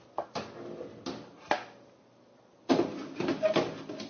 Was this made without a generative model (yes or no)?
yes